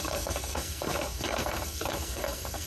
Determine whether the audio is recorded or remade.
remade